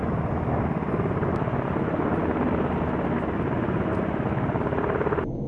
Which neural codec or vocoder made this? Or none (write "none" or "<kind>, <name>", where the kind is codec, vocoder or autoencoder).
none